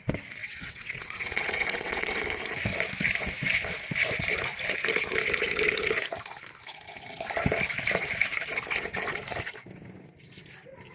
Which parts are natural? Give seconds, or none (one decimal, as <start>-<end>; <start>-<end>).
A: 0.0-0.4; 2.2-10.9